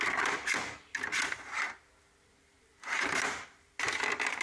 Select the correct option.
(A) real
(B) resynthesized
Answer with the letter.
A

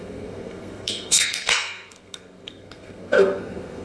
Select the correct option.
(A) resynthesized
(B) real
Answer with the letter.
A